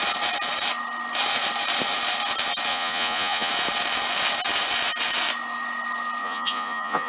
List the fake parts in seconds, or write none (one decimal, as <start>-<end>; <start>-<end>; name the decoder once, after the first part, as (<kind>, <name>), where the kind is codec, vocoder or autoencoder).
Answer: 2.7-3.5 (vocoder, Vocos); 6.2-7.1